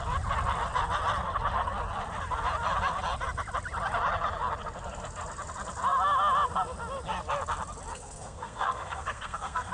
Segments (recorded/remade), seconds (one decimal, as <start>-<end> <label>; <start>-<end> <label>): 0.0-7.9 recorded; 7.9-9.7 remade